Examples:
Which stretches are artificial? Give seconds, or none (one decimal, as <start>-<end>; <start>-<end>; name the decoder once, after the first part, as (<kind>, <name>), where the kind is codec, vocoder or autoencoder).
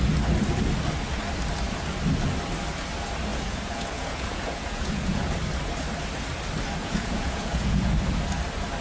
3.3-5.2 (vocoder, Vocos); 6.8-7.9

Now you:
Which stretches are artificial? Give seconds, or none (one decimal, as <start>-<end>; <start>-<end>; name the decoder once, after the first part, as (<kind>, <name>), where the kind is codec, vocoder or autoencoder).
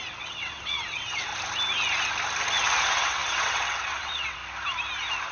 0.0-1.3 (vocoder, WaveNeXt); 2.8-4.4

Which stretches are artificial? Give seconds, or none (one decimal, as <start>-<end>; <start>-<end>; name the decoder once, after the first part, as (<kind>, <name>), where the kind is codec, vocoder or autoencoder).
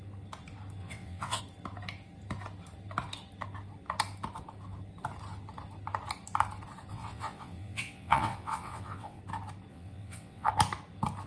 0.8-1.4 (vocoder, WaveNeXt); 6.9-9.2; 9.7-10.5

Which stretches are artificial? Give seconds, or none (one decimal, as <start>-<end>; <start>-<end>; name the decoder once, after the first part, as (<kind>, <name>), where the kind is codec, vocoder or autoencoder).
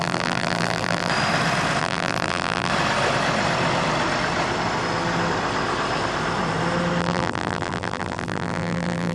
0.0-1.1 (vocoder, BigVGAN v2); 1.8-2.7; 7.0-9.1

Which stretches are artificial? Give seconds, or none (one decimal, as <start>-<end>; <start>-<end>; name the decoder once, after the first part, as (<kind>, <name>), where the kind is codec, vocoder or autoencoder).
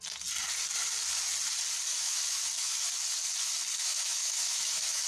1.9-2.9 (autoencoder, DAC-VAE); 3.8-5.1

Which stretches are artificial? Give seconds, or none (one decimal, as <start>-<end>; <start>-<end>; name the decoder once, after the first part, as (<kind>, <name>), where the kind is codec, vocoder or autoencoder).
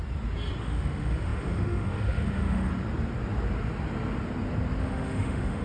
0.6-2.7 (autoencoder, DAC-VAE); 4.8-5.6